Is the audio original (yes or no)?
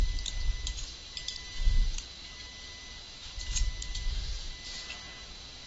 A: yes